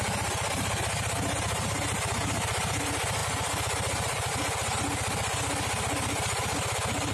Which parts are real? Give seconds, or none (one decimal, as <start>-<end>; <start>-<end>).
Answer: 0.7-3.2; 4.3-7.1